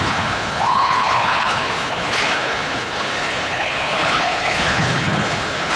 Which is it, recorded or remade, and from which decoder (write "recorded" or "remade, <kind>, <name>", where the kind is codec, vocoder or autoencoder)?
remade, codec, HILCodec